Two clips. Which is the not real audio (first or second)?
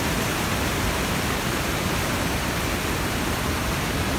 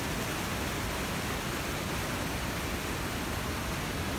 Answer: first